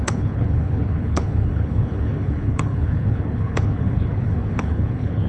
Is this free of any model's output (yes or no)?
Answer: no